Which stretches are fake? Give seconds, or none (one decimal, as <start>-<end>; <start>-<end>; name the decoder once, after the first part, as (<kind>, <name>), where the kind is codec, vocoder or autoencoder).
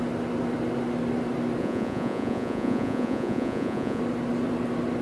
1.6-4.0 (vocoder, Vocos)